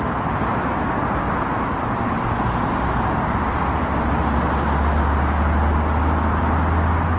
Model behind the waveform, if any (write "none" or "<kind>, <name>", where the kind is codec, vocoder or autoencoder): none